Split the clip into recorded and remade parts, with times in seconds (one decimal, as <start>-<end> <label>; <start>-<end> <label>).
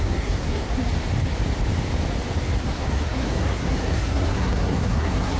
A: 0.0-0.7 remade; 0.7-2.6 recorded; 2.6-5.4 remade